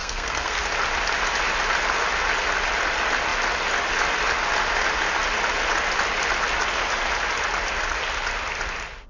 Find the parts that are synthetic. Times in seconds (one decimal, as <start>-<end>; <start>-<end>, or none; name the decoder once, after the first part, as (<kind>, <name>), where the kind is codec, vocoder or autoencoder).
0.0-0.6 (codec, SNAC)